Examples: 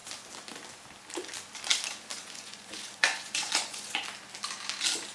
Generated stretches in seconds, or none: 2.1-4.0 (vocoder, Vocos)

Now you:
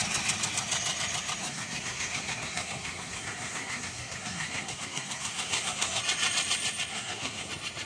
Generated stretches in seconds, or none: 1.4-6.0 (codec, SNAC); 6.9-7.5

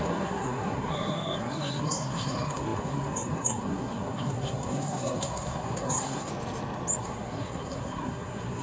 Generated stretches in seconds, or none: 0.0-6.3 (codec, SNAC); 7.0-8.6

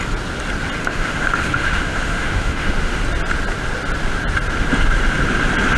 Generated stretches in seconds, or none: 0.8-3.0 (autoencoder, DAC-VAE)

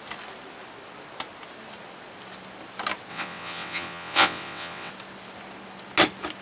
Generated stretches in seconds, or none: 3.1-4.9 (vocoder, WaveNeXt)

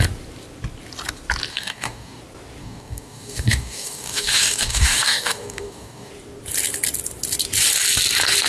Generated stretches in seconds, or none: 1.5-2.2 (codec, DAC); 2.6-6.1

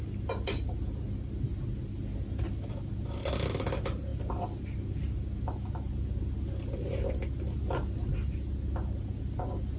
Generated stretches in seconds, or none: none

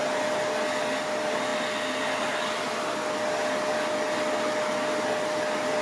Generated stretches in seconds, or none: none